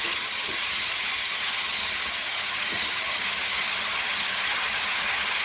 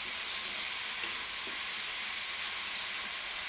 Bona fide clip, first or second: second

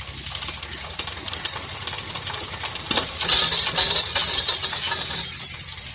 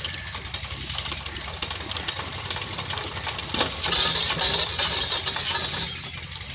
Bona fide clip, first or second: first